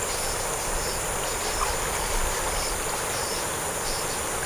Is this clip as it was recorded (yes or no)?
yes